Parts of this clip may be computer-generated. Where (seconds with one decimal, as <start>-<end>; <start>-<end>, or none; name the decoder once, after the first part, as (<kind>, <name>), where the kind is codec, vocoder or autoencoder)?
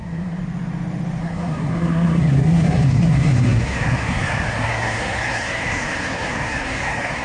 0.0-0.4 (codec, SNAC); 1.2-7.2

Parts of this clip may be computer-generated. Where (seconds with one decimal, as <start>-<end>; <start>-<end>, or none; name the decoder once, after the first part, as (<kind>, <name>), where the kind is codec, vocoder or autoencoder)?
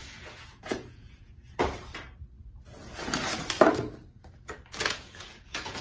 0.0-1.4 (vocoder, Vocos); 4.8-5.8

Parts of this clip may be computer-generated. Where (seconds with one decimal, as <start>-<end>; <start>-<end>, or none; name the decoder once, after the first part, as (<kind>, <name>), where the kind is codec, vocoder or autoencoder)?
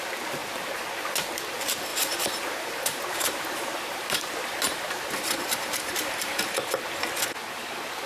1.9-6.4 (vocoder, BigVGAN v2)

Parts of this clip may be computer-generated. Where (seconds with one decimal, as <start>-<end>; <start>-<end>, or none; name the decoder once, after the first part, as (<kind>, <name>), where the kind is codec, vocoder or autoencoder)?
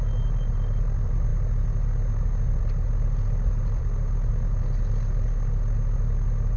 none